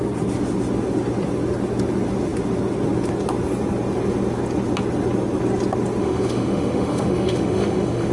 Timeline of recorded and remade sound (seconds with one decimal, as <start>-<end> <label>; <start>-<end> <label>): 0.0-6.0 recorded; 6.0-8.1 remade